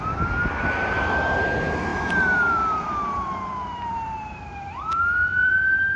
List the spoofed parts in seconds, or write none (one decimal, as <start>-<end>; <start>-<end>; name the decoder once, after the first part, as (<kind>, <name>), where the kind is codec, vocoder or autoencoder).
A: 1.9-5.5 (vocoder, BigVGAN v2)